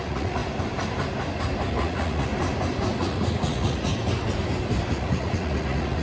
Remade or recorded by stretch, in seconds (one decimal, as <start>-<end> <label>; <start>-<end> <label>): 0.0-0.4 remade; 0.4-1.7 recorded; 1.7-2.3 remade; 2.3-3.0 recorded; 3.0-3.9 remade; 3.9-4.9 recorded; 4.9-6.0 remade